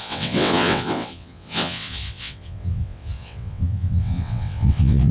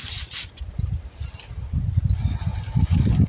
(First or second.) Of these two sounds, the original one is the second